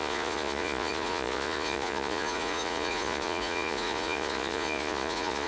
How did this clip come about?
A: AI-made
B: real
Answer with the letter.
A